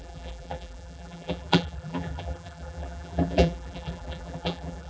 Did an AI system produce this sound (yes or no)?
yes